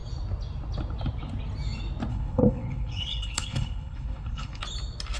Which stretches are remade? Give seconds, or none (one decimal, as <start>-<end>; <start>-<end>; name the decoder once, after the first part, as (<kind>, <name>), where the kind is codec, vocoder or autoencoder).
2.1-4.6 (codec, HILCodec)